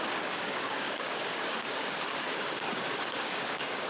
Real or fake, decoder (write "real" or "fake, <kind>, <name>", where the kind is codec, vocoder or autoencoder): fake, codec, DAC